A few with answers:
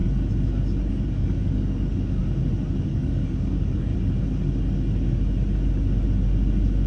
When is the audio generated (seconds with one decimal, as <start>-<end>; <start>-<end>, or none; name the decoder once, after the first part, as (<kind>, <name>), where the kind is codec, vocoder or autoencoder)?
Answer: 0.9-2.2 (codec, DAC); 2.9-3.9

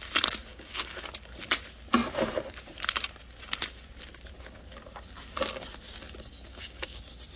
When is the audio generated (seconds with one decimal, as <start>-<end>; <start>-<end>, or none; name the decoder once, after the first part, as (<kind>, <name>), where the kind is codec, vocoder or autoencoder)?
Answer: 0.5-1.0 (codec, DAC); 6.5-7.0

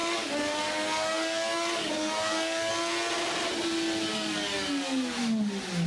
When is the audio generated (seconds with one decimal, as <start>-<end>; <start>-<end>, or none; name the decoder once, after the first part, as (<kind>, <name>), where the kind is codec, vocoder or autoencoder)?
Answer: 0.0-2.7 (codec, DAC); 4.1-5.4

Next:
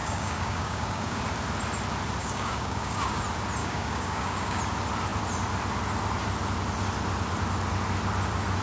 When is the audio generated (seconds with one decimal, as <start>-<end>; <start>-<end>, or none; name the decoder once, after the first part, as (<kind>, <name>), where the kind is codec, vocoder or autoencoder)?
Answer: 0.0-1.2 (codec, DAC); 2.2-3.2; 3.6-4.6

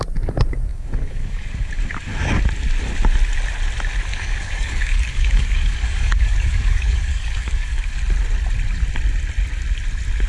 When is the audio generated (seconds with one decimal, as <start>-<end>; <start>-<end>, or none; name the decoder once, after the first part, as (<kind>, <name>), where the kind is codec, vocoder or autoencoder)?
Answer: 0.7-1.7 (codec, DAC); 4.1-8.0